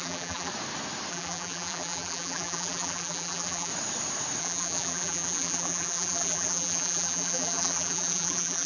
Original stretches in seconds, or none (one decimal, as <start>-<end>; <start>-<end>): 0.5-1.1; 3.7-4.4